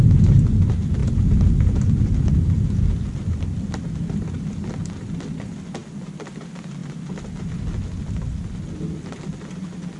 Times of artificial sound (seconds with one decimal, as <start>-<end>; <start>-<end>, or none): none